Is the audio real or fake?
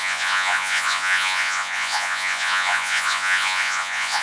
fake